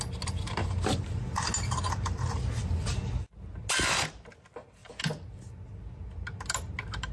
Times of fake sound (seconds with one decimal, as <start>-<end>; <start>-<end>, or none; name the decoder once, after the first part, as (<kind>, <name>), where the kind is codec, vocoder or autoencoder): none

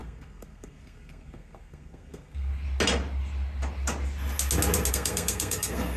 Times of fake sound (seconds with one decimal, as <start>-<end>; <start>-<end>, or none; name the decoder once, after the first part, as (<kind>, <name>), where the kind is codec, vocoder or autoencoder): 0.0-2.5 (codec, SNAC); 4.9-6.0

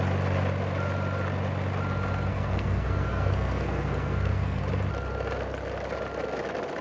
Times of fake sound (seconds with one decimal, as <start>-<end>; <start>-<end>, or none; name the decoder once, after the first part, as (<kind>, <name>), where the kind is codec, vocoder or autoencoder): 2.3-4.6 (codec, SNAC)

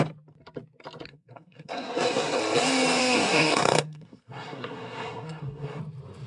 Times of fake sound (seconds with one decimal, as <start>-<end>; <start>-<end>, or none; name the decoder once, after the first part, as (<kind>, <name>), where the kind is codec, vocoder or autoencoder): 1.1-2.4 (codec, SNAC); 3.0-5.8

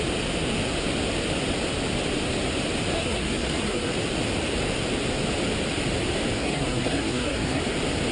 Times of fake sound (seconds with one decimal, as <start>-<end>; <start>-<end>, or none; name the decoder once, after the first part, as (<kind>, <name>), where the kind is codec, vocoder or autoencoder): 2.9-3.9 (codec, SNAC); 6.4-7.6